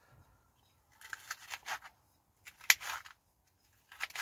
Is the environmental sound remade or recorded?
recorded